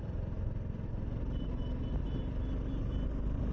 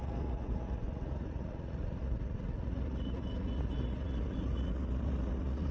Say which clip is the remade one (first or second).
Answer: second